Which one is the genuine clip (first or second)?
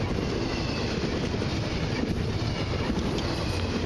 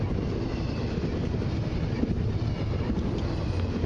second